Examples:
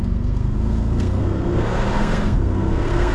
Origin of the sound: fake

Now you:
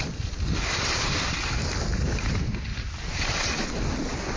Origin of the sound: real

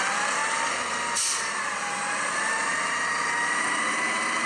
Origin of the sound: real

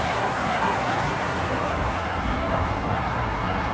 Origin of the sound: fake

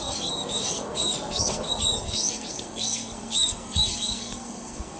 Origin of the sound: fake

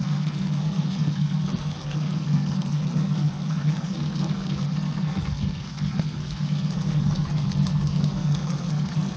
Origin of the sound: fake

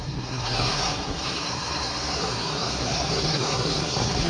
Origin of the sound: fake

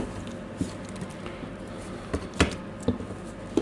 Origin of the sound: real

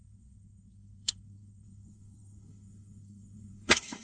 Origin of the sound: fake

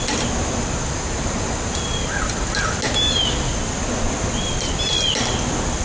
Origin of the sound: real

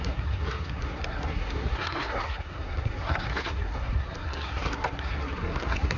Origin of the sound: fake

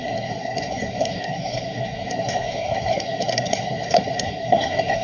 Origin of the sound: fake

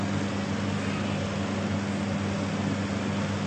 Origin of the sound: real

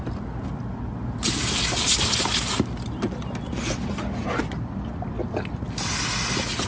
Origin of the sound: real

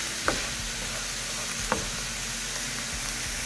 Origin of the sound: real